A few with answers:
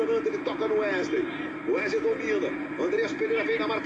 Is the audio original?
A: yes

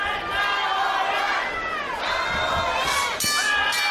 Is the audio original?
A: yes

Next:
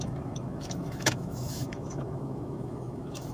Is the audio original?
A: no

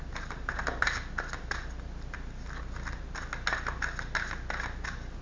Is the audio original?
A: yes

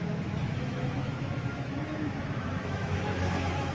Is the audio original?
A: no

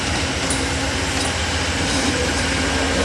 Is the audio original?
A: yes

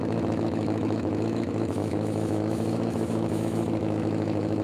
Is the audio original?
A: no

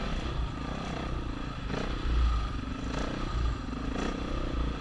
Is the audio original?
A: yes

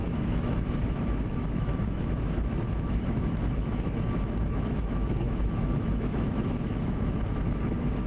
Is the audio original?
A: no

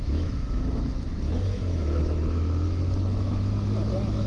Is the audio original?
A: no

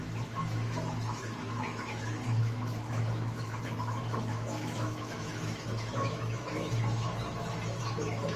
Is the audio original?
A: no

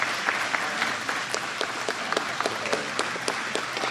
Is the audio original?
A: yes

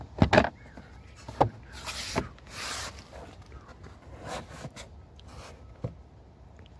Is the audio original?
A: yes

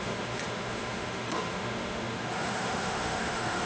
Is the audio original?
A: no